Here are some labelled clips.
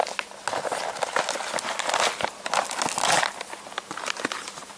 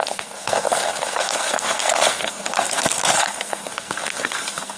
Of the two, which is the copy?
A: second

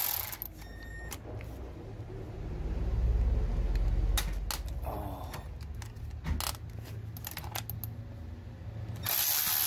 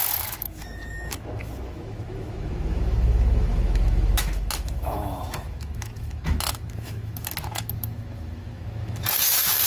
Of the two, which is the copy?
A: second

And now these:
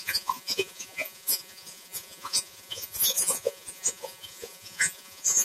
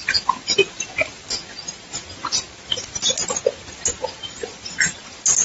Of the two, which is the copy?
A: first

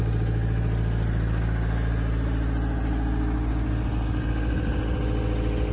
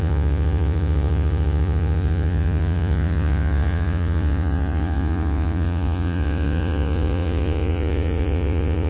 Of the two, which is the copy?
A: second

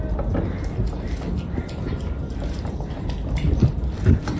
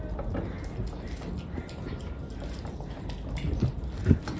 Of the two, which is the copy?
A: first